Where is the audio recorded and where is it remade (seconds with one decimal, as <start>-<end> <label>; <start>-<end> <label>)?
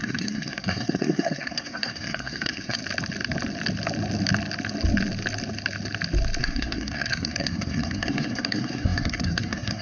0.0-2.8 remade; 2.8-6.4 recorded; 6.4-9.8 remade